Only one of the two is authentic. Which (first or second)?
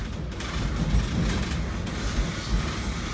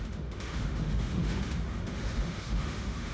first